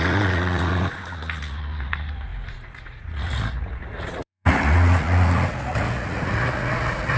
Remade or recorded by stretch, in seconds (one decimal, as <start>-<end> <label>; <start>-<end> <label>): 0.0-7.2 remade